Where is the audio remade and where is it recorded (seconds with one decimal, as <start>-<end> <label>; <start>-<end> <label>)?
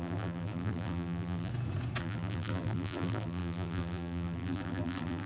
0.0-1.5 remade; 1.5-2.0 recorded; 2.0-5.3 remade